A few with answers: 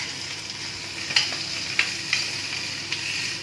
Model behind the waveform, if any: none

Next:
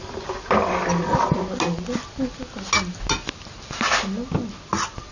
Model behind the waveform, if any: none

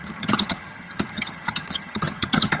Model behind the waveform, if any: vocoder, HiFi-GAN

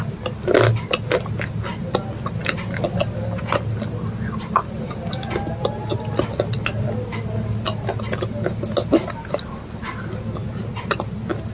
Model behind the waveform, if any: none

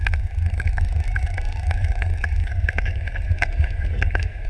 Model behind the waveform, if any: codec, SNAC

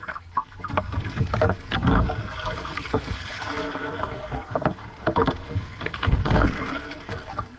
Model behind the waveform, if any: codec, SNAC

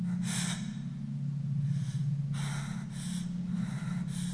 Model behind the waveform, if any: none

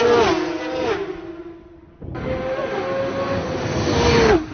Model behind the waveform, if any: none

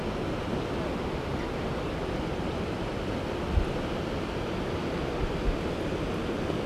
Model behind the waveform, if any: none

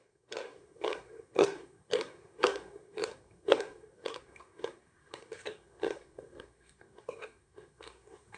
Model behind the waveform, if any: codec, SNAC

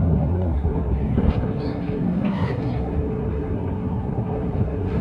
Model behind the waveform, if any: codec, SNAC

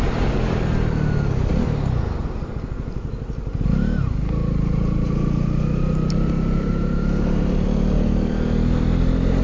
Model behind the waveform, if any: none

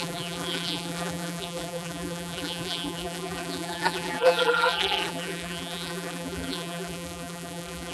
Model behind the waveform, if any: vocoder, BigVGAN v2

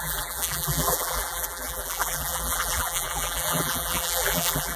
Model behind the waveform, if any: vocoder, BigVGAN v2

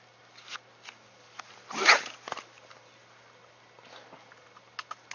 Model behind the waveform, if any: none